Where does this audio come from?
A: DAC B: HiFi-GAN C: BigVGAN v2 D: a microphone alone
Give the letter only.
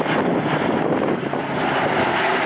C